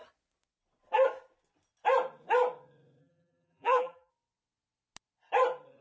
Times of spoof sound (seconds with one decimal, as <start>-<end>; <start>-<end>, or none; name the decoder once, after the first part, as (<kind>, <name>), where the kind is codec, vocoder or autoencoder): 3.0-4.1 (vocoder, BigVGAN v2)